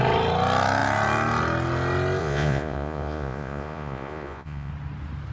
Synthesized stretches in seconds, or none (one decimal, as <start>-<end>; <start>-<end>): 2.2-4.7